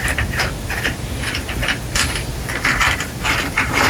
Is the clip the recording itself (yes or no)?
no